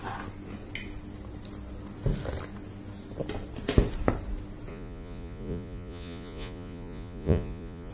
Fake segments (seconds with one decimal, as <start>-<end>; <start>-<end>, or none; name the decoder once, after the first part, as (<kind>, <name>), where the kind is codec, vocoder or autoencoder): 4.7-7.9 (vocoder, Vocos)